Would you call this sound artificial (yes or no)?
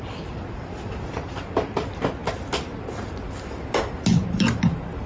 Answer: no